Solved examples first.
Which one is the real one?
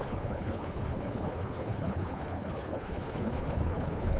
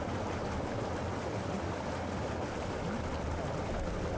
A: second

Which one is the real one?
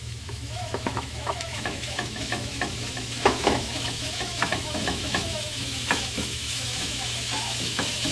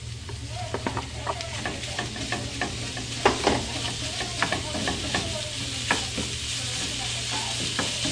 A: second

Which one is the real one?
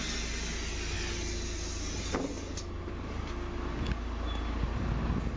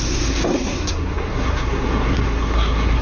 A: first